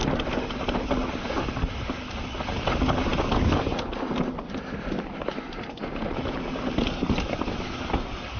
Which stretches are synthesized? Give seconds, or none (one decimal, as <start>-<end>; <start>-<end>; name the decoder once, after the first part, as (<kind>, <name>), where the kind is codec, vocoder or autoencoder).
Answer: none